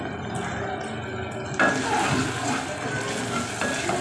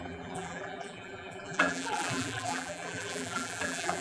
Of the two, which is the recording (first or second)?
first